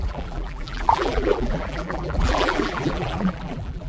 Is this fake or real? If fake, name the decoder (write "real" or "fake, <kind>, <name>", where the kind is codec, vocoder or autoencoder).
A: fake, vocoder, BigVGAN v2